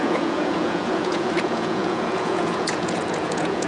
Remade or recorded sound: remade